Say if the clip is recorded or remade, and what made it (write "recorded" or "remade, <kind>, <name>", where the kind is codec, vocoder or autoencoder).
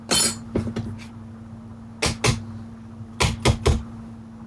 recorded